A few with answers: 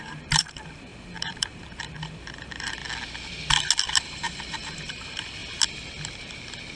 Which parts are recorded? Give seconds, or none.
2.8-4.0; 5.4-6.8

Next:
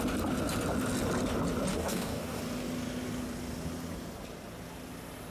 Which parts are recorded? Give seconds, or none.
0.0-1.7; 2.4-5.3

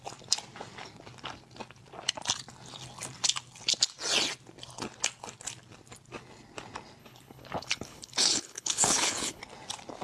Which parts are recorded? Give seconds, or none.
0.0-7.0; 9.4-10.0

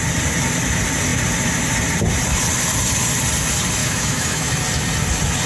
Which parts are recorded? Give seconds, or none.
0.0-3.8; 4.5-5.5

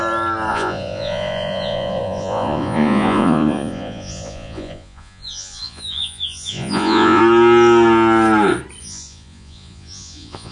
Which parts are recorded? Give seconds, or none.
0.0-0.5; 7.2-8.8

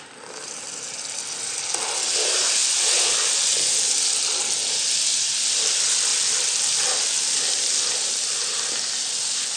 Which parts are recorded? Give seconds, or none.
0.0-9.6

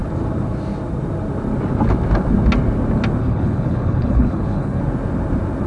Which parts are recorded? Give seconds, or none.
0.0-3.2; 4.8-5.7

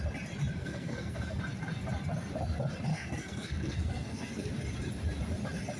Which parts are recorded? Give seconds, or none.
0.0-0.6; 1.4-2.9; 4.5-5.8